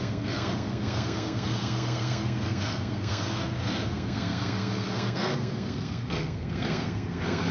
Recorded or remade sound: remade